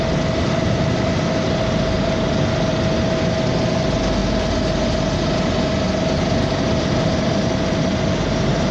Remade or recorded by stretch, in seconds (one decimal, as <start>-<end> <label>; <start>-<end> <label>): 0.0-8.7 recorded